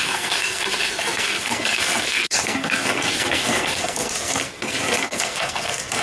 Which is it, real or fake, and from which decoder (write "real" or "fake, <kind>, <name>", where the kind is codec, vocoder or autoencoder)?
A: fake, codec, SNAC